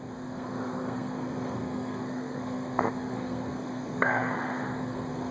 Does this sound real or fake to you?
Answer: fake